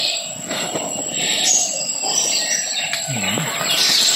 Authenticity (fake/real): real